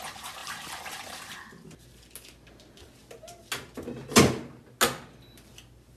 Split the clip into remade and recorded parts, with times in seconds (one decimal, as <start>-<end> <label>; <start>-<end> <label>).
0.0-6.0 recorded